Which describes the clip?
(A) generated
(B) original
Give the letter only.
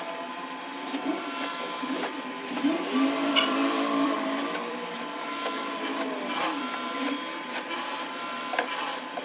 A